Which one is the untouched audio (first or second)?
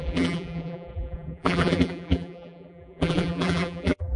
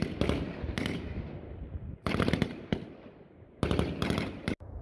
second